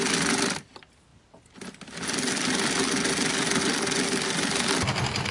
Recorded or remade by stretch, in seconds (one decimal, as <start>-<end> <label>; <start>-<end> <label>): 0.0-5.3 recorded